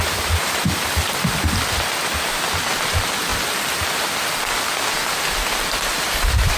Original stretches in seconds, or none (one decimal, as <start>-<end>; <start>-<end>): 0.0-6.6

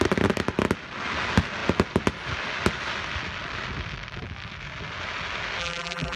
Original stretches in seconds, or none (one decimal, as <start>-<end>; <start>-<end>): 0.0-5.6

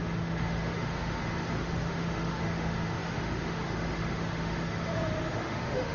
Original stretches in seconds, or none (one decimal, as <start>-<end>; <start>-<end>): none